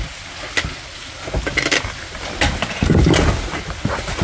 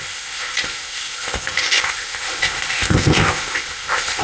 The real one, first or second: first